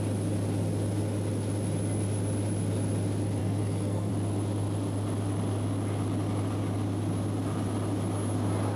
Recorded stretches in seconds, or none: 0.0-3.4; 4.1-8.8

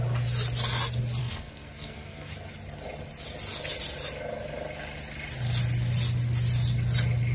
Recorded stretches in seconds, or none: 0.0-1.2; 2.3-7.3